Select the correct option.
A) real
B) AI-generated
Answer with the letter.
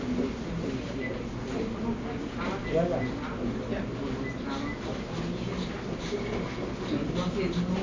A